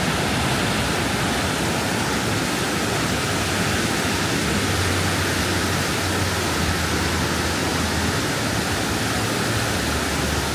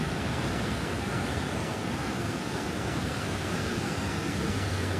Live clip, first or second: first